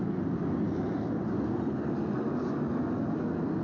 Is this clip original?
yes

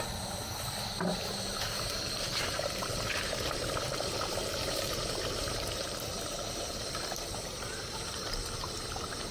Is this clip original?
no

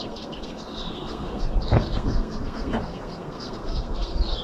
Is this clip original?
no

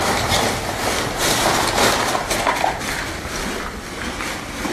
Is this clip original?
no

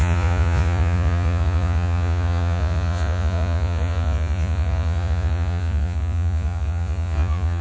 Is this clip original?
no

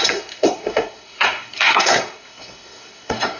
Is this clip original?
no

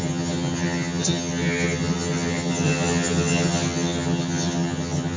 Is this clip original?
no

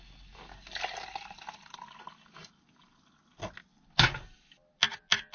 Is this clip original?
yes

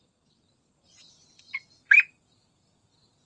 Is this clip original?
yes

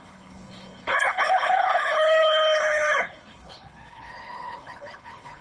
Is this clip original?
no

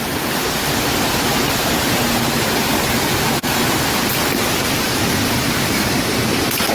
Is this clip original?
yes